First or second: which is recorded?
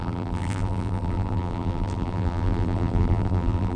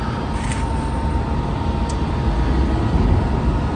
second